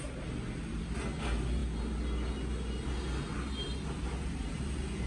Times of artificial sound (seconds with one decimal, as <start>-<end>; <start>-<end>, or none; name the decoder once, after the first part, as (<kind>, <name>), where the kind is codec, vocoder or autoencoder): none